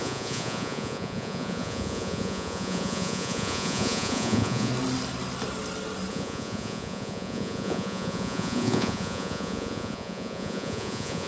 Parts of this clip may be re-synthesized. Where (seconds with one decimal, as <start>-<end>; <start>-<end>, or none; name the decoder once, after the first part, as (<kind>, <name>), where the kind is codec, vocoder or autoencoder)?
0.0-4.7 (vocoder, Vocos); 6.1-11.3